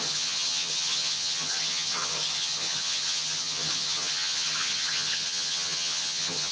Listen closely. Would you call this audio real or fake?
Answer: fake